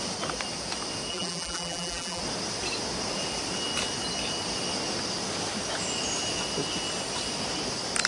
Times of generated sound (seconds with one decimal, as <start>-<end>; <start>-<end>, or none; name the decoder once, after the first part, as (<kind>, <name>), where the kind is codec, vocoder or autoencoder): 1.1-2.2 (vocoder, BigVGAN v2)